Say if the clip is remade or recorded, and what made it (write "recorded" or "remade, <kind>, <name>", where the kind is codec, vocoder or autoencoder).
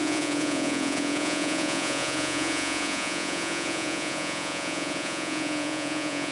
remade, vocoder, Vocos